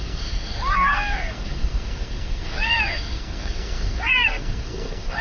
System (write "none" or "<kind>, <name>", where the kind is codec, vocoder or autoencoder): codec, SNAC